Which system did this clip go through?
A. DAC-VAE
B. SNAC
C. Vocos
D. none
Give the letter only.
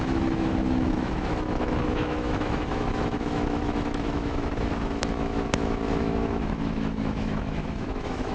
A